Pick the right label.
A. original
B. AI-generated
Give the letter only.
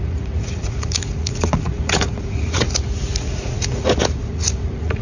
B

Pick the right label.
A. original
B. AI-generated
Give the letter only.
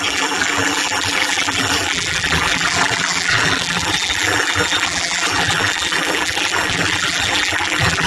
B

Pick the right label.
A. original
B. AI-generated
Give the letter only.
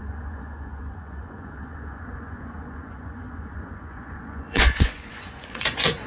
B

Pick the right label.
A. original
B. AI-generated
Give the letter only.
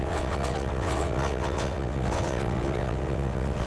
B